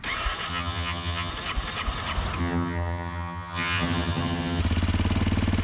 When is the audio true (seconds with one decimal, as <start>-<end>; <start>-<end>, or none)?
0.0-0.5; 1.3-2.4; 4.6-5.6

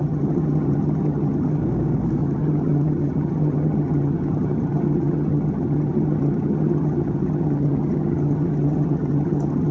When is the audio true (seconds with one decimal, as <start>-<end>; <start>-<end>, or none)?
1.6-2.2

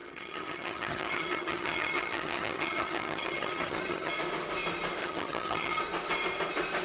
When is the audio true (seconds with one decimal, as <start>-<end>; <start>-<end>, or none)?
4.1-5.0; 5.8-6.8

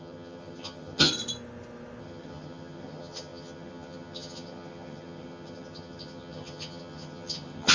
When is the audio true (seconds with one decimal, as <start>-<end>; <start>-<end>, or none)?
1.1-2.0

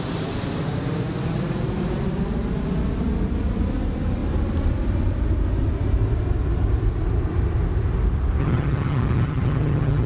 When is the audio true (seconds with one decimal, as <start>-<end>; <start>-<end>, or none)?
0.0-8.4